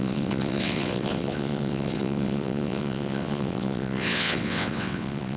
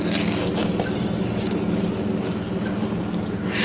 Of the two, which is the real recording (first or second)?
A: second